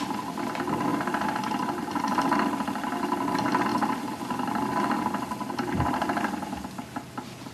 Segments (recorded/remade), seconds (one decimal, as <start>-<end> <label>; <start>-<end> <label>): 0.0-7.5 recorded